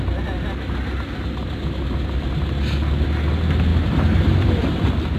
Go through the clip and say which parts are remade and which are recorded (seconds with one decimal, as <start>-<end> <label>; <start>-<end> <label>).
0.0-3.7 recorded; 3.7-4.5 remade; 4.5-5.2 recorded